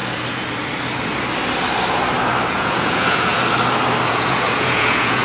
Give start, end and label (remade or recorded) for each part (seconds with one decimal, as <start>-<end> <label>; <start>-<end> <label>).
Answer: 0.0-2.5 recorded; 2.5-3.3 remade; 3.3-4.1 recorded; 4.1-5.2 remade